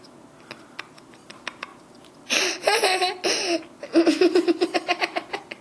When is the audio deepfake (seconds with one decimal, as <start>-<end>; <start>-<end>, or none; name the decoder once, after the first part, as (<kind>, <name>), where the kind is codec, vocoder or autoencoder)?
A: none